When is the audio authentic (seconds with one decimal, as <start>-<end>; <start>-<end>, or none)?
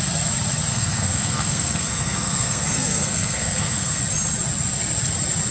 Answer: 0.0-0.7; 4.0-5.5